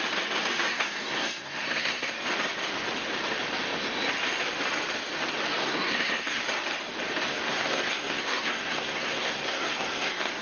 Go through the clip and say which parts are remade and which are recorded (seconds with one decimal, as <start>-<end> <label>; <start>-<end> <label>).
0.0-0.7 recorded; 0.7-2.1 remade; 2.1-5.6 recorded; 5.6-6.4 remade; 6.4-7.3 recorded; 7.3-10.4 remade